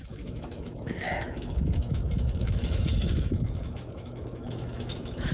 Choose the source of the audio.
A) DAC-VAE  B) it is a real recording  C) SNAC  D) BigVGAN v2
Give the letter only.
A